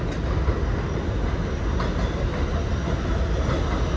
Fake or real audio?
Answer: real